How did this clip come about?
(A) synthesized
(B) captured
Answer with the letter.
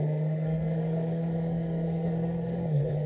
A